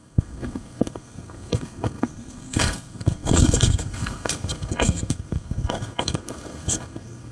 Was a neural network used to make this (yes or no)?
yes